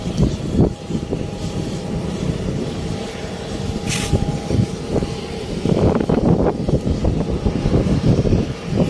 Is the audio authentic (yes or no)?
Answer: no